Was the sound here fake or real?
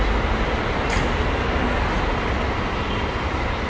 real